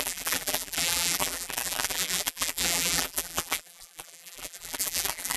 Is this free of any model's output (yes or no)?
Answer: no